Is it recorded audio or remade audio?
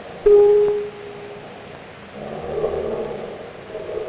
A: recorded